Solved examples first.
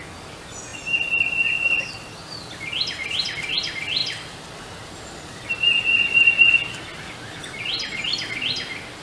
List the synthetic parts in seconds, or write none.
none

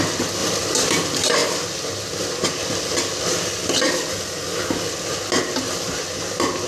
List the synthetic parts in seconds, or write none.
none

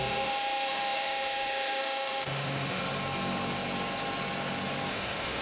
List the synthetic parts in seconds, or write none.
0.0-2.8; 4.9-5.4